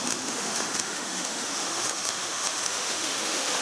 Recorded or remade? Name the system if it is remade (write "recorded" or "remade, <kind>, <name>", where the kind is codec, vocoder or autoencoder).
remade, autoencoder, DAC-VAE